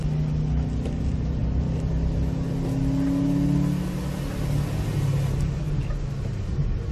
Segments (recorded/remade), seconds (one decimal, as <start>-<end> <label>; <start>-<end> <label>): 0.0-6.9 recorded